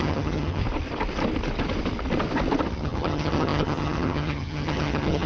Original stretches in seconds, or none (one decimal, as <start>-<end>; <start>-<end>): 0.6-2.7